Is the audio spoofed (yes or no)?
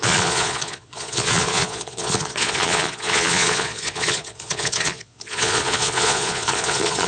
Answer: yes